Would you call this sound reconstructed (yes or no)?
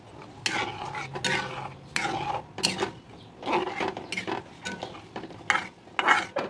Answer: no